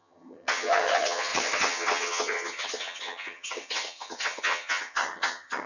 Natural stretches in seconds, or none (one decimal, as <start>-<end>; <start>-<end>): none